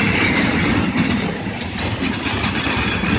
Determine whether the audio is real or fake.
fake